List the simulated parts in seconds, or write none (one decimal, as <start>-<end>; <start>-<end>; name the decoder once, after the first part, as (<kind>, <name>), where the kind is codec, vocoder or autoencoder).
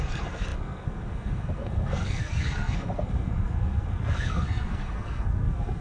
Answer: 0.0-5.8 (codec, SNAC)